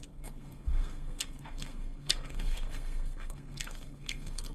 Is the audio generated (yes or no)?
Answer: yes